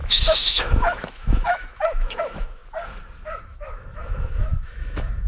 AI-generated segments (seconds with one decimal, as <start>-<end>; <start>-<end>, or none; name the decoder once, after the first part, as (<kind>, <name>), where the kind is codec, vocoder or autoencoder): 0.0-2.6 (autoencoder, DAC-VAE); 3.4-5.3